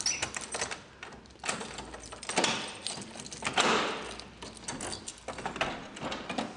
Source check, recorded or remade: recorded